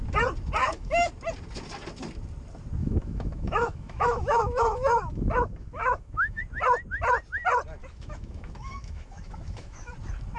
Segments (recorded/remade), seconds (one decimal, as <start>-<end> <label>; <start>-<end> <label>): 0.0-0.6 recorded; 0.6-1.1 remade; 1.1-2.8 recorded; 2.8-6.4 remade; 6.4-7.8 recorded; 7.8-9.9 remade; 9.9-10.4 recorded